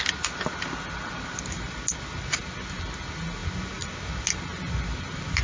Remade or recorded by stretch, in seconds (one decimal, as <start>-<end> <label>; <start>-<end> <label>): 0.0-5.4 recorded